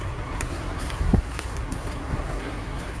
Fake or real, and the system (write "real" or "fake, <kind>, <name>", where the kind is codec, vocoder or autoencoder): fake, codec, SNAC